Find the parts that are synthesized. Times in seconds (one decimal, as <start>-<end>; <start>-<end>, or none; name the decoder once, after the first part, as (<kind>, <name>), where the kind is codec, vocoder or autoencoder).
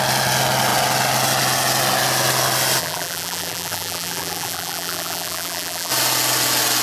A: 2.8-5.9 (vocoder, BigVGAN v2)